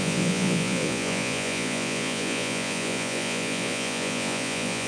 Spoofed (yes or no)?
yes